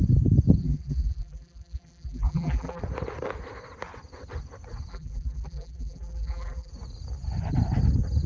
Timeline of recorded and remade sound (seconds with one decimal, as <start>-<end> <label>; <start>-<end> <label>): 0.0-0.6 recorded; 0.6-2.8 remade; 2.8-4.9 recorded; 4.9-6.7 remade; 6.7-8.3 recorded